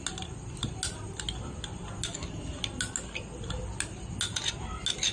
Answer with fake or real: real